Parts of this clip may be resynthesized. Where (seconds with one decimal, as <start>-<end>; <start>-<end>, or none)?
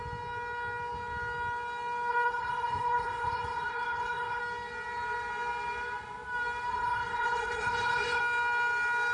2.1-4.4; 6.7-8.2